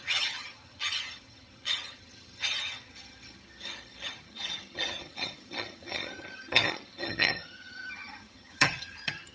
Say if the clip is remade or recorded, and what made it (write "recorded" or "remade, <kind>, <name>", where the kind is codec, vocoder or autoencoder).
remade, vocoder, HiFi-GAN